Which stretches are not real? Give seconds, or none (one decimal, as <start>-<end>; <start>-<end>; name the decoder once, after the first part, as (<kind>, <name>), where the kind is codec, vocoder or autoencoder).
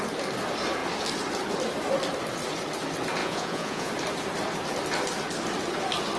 3.2-3.9 (vocoder, Vocos)